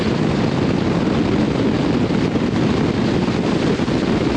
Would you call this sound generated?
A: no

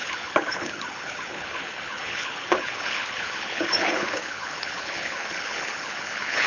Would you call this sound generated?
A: yes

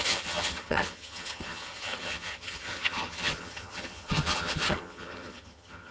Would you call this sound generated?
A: yes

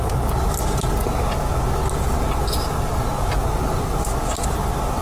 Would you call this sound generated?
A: no